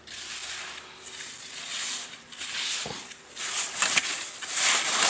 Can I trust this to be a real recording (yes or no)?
yes